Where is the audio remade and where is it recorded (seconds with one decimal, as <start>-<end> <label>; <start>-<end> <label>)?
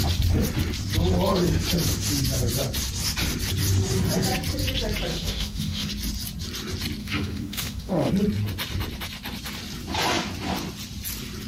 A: 0.0-5.1 recorded; 5.1-5.9 remade; 5.9-7.0 recorded; 7.0-8.1 remade; 8.1-11.5 recorded